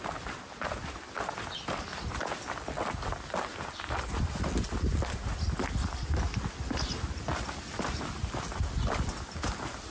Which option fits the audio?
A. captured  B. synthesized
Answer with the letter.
A